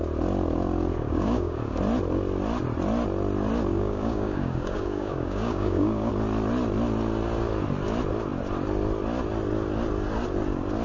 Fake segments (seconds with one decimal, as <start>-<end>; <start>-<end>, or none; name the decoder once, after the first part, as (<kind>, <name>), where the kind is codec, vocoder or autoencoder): 0.9-1.8 (codec, DAC); 3.7-6.1